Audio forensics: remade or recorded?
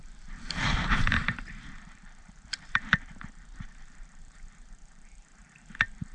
remade